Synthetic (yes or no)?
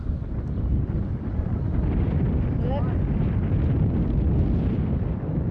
no